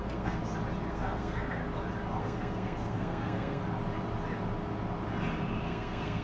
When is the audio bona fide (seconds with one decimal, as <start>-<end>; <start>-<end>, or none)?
0.4-0.9; 1.6-2.2; 3.6-5.6